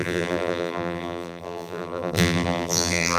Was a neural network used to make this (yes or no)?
yes